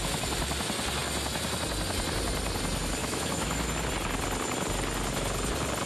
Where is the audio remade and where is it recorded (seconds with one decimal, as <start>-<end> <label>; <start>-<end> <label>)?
0.0-3.0 recorded; 3.0-3.7 remade; 3.7-5.9 recorded

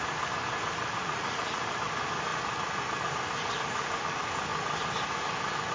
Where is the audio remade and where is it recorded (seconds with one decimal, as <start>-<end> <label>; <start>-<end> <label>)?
0.0-1.0 recorded; 1.0-1.6 remade; 1.6-5.7 recorded

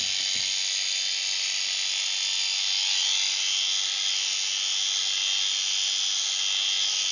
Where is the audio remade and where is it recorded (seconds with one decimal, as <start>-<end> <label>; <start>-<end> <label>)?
0.0-7.1 recorded

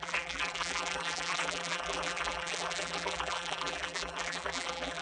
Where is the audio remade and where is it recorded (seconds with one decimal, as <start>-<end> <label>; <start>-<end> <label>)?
0.0-5.0 remade

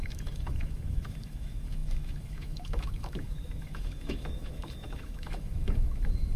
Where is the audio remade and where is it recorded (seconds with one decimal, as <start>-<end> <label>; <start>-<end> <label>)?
0.0-6.4 remade